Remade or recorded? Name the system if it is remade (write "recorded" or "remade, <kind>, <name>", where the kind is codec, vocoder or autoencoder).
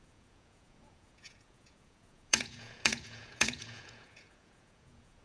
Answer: remade, vocoder, Vocos